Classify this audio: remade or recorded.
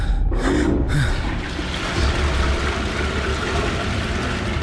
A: recorded